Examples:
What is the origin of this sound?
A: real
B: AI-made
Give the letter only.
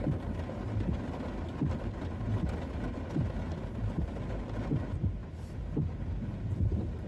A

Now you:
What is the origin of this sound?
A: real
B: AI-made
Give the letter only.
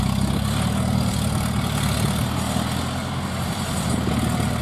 A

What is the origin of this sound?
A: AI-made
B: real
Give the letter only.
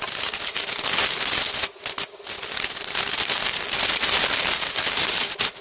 B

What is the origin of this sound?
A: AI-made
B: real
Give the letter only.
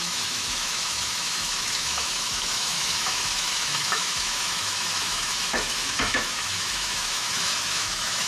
A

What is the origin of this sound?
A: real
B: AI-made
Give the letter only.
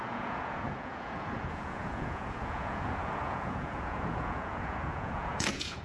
B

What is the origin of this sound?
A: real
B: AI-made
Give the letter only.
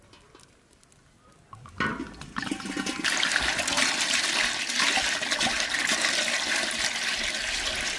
A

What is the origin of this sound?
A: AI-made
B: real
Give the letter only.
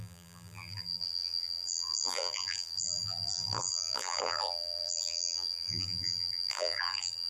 A